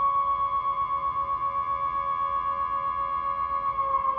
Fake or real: real